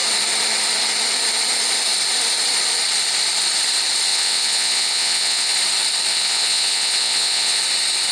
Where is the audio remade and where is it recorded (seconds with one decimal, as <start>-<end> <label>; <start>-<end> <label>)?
0.0-4.1 recorded; 4.1-5.5 remade; 5.5-6.1 recorded; 6.1-7.6 remade; 7.6-8.1 recorded